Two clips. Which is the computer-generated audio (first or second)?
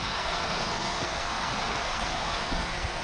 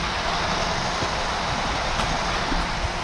first